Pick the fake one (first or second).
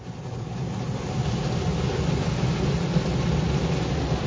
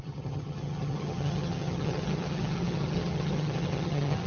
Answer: second